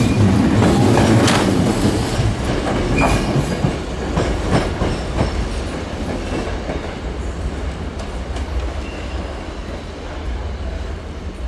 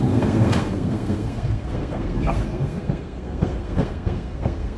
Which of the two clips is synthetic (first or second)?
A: second